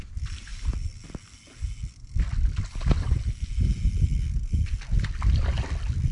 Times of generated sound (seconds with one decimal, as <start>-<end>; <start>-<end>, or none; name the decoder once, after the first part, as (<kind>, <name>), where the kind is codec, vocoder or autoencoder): 0.0-6.1 (vocoder, BigVGAN v2)